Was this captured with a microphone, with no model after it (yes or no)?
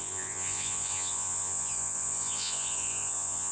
no